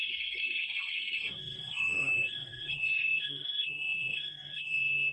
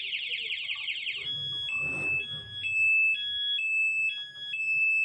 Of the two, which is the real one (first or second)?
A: second